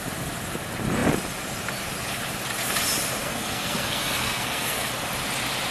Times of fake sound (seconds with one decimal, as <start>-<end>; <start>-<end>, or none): 3.2-4.9